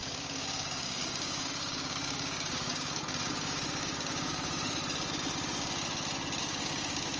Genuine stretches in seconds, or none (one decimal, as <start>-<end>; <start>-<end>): 4.8-6.4